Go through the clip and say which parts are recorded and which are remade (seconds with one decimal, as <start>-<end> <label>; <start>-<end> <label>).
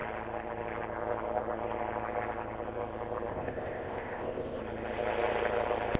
0.0-3.3 recorded; 3.3-4.6 remade; 4.6-6.0 recorded